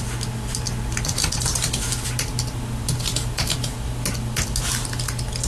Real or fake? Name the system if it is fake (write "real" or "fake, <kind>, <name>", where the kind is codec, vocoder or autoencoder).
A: real